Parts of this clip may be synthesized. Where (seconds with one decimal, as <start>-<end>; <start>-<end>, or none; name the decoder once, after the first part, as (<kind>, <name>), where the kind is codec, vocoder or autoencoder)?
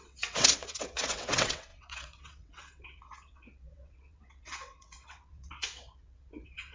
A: 0.0-6.7 (vocoder, WaveNeXt)